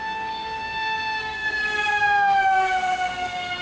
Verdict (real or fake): fake